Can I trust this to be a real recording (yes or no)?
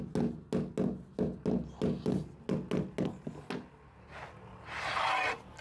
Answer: yes